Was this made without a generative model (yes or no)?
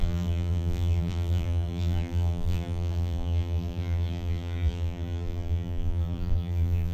no